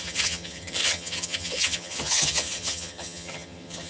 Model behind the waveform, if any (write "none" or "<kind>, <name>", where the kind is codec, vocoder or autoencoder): vocoder, HiFi-GAN